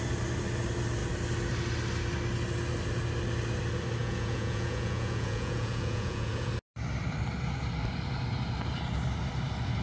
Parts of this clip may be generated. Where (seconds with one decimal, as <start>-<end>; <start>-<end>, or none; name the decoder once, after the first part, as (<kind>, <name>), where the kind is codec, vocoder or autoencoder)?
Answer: 4.0-6.5 (vocoder, Vocos)